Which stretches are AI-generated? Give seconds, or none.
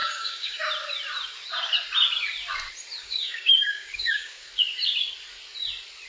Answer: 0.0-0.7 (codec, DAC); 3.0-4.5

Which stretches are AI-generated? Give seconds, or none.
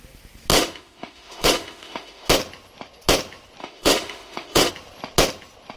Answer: 0.5-2.3 (autoencoder, DAC-VAE); 3.6-4.7